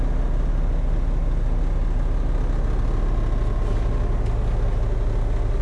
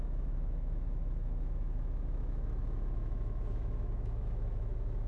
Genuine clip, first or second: first